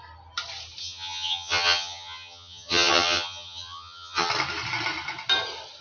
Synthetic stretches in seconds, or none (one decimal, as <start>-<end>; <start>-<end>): 0.8-4.3